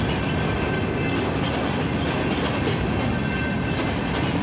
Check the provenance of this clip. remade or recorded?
recorded